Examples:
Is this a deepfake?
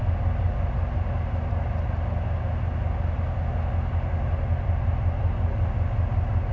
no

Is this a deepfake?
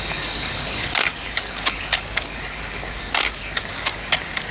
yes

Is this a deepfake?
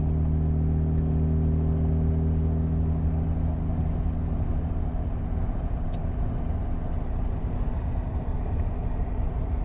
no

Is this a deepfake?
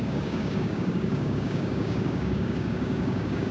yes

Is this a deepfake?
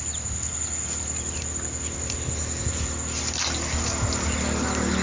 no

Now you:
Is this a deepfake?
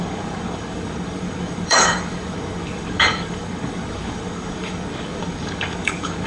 yes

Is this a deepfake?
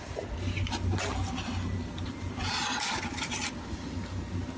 no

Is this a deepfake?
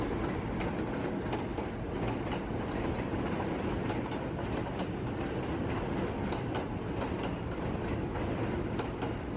no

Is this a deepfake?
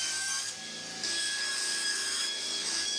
yes